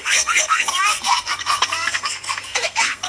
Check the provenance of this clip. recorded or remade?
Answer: remade